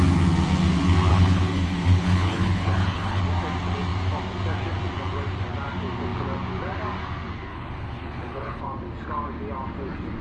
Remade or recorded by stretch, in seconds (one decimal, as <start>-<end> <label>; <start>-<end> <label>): 0.0-1.1 recorded; 1.1-3.2 remade; 3.2-7.5 recorded; 7.5-8.6 remade; 8.6-10.2 recorded